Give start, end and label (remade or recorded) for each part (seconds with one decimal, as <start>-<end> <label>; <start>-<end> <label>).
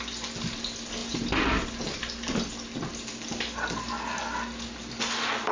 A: 0.0-5.5 recorded